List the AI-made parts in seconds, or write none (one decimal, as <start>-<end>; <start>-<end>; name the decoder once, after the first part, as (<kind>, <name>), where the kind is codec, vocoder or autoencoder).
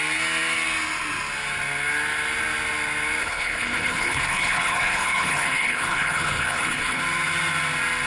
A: 3.2-7.0 (codec, HILCodec)